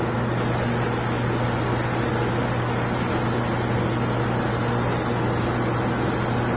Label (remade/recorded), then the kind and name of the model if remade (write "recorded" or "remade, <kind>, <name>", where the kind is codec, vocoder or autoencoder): recorded